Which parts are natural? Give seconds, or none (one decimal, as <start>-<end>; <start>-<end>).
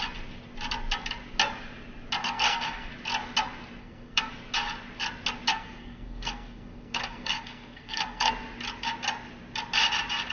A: 0.0-2.2; 2.9-3.8; 4.3-5.5; 8.3-10.3